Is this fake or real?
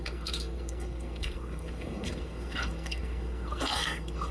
fake